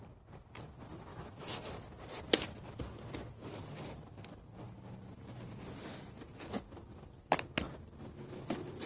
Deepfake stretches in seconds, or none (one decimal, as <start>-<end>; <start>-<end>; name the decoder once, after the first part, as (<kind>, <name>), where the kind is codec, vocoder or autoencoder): 1.1-1.7 (autoencoder, DAC-VAE)